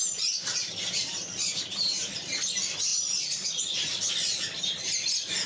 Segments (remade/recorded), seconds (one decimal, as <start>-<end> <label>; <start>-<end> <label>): 0.0-5.5 recorded